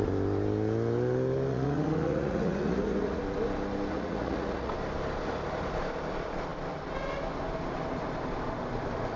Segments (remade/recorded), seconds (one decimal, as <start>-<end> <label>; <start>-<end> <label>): 0.0-1.5 recorded; 1.5-3.2 remade; 3.2-3.9 recorded; 3.9-4.7 remade; 4.7-9.2 recorded